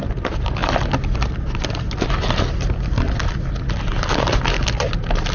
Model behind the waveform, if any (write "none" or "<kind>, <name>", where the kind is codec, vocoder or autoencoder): none